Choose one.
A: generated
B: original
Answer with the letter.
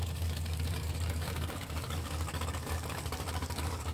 A